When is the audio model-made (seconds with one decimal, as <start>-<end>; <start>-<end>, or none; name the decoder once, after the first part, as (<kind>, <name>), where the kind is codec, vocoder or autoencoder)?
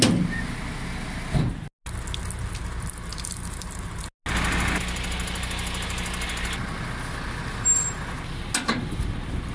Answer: 3.1-4.0 (vocoder, BigVGAN v2)